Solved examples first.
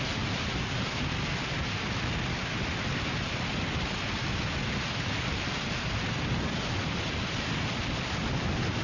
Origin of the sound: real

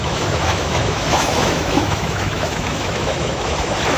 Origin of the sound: fake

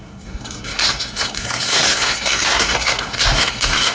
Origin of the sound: fake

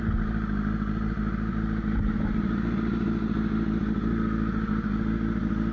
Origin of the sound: real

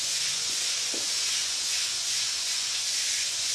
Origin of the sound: fake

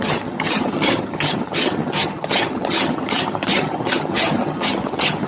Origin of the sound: fake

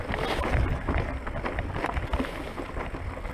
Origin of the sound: real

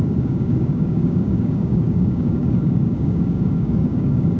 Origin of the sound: fake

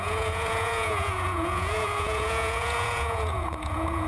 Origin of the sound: fake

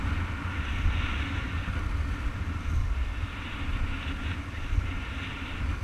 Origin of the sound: real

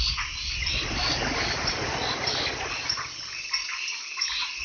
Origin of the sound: real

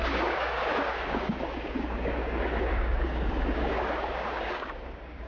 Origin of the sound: fake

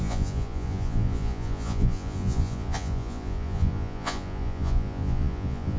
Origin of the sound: fake